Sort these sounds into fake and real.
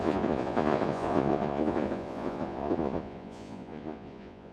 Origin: fake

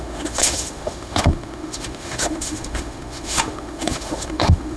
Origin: fake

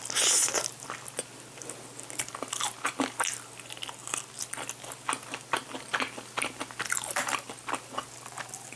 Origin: real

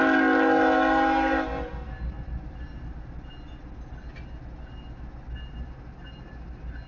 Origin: real